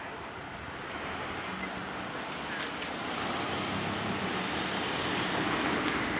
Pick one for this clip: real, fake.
real